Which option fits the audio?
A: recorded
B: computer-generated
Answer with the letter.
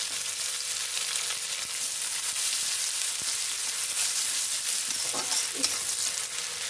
A